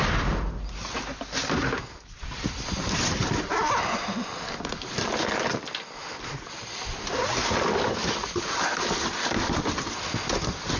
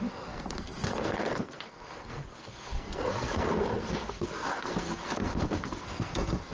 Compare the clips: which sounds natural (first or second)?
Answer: first